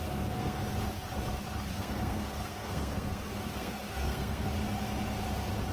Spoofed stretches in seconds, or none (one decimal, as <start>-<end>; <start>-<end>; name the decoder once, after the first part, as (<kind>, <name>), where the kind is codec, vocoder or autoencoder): 0.0-0.6 (codec, SNAC); 1.7-4.5